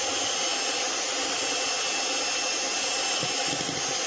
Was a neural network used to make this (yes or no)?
no